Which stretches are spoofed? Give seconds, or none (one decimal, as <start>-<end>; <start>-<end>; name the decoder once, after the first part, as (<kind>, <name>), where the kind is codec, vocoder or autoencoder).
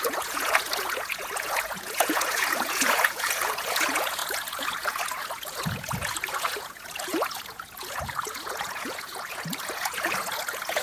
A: 0.0-10.8 (vocoder, Vocos)